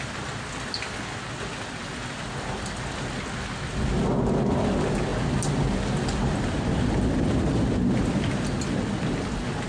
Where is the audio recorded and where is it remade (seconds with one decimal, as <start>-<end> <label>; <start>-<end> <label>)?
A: 0.0-9.7 recorded